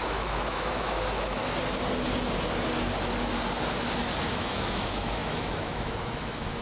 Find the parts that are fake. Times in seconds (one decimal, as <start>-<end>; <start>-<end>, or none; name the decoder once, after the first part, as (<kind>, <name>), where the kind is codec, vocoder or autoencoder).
0.0-1.4 (autoencoder, DAC-VAE); 4.3-6.6